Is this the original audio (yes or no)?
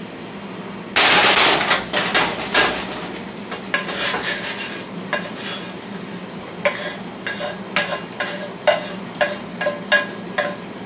yes